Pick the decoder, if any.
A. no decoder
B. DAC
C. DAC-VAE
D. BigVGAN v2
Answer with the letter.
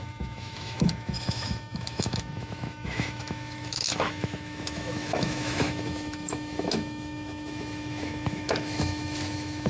C